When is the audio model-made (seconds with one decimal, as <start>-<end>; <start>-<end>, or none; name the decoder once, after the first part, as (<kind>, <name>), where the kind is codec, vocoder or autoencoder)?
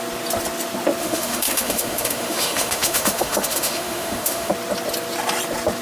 1.0-4.5 (autoencoder, DAC-VAE)